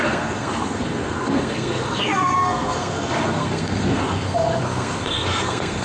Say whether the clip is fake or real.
fake